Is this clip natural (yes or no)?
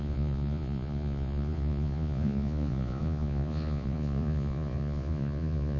no